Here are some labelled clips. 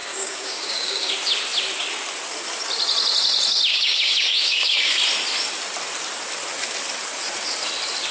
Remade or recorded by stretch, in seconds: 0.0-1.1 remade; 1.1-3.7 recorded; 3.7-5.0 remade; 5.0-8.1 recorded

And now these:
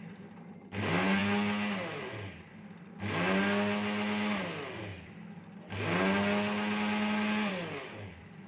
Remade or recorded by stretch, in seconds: 0.0-7.5 recorded; 7.5-8.1 remade; 8.1-8.5 recorded

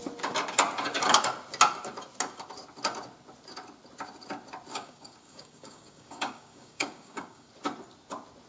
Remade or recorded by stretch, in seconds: 0.0-4.7 recorded; 4.7-7.5 remade; 7.5-8.5 recorded

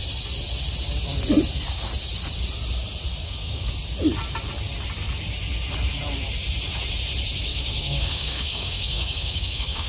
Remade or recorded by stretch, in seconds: 0.0-3.1 recorded; 3.1-3.7 remade; 3.7-7.5 recorded; 7.5-9.9 remade